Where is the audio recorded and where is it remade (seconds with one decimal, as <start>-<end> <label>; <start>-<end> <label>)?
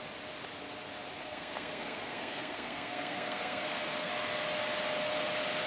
0.0-1.2 recorded; 1.2-4.1 remade; 4.1-5.7 recorded